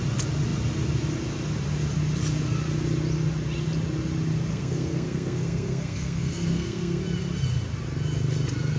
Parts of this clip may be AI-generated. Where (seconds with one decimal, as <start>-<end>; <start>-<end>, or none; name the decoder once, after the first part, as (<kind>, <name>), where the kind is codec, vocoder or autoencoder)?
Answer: 4.5-7.0 (codec, SNAC)